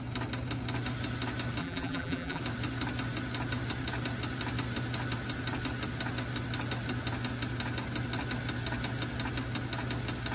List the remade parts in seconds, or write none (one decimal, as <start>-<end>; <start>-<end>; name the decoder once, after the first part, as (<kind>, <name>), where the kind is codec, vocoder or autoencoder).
1.6-2.4 (vocoder, BigVGAN v2)